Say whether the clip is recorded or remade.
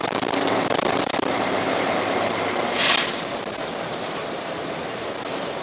remade